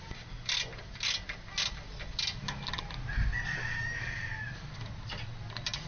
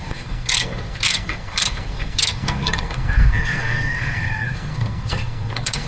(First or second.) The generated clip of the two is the second